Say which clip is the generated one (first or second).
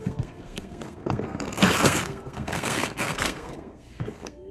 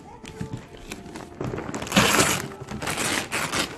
first